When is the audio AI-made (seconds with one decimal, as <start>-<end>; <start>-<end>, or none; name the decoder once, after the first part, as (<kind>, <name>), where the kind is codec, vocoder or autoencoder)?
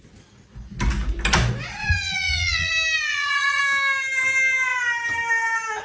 1.8-2.7 (vocoder, Vocos); 3.1-3.6